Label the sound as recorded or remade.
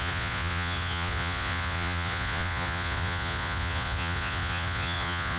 remade